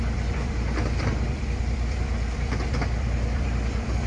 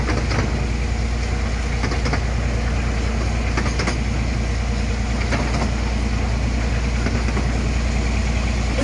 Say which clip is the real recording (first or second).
second